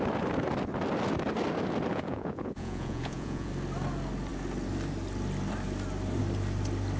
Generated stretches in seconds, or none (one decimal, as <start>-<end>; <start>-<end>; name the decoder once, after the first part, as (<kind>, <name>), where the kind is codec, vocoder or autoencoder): 1.9-3.5 (vocoder, Vocos)